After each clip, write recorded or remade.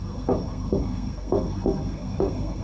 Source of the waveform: remade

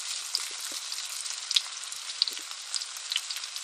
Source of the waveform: recorded